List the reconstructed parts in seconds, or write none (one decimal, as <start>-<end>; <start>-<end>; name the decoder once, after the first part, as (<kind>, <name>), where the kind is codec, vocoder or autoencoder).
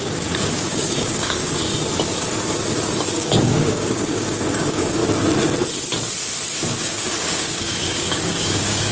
0.0-1.7 (codec, DAC); 3.1-5.0; 6.8-8.9